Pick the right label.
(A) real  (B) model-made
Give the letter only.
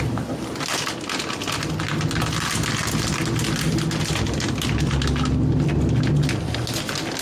A